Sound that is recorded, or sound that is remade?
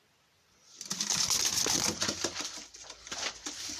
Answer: recorded